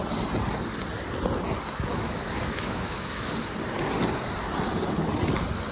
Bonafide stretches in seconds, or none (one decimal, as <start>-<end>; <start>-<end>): 0.0-1.9; 3.3-5.7